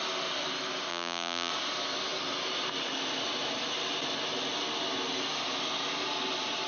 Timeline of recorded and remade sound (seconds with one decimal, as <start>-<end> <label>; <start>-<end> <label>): 0.0-0.9 recorded; 0.9-1.5 remade; 1.5-6.7 recorded